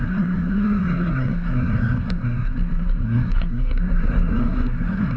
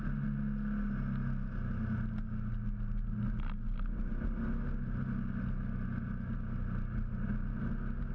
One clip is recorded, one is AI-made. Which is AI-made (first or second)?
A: first